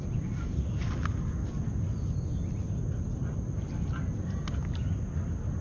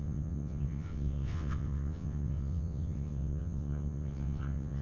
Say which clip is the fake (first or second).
second